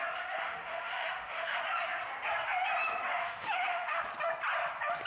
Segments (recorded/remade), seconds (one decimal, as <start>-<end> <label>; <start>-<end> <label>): 0.0-0.4 recorded; 0.4-1.6 remade; 1.6-3.2 recorded; 3.2-4.0 remade; 4.0-5.1 recorded